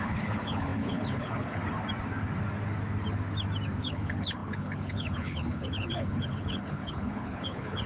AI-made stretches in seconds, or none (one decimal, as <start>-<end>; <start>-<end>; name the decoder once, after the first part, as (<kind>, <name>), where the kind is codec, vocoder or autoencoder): 0.0-1.6 (codec, HILCodec); 3.8-7.9